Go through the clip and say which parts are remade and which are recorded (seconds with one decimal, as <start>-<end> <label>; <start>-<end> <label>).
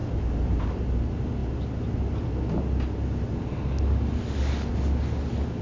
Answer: 0.0-0.8 remade; 0.8-5.6 recorded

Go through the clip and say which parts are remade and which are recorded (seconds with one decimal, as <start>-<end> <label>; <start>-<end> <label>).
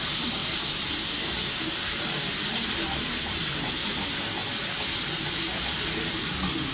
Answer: 0.0-4.4 remade; 4.4-5.3 recorded; 5.3-6.7 remade